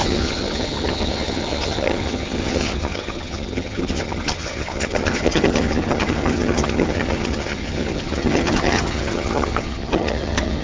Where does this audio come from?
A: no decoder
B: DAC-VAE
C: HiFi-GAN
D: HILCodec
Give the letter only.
C